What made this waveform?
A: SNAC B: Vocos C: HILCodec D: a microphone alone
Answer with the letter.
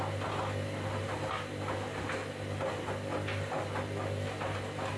D